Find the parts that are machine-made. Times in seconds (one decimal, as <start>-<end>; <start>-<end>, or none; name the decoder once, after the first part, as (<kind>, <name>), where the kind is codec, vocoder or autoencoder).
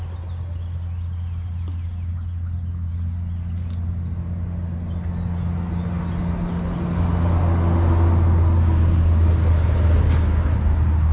none